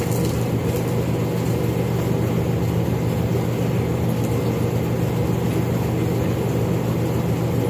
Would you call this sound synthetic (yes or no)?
no